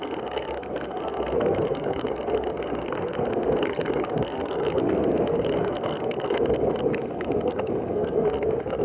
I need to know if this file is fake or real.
fake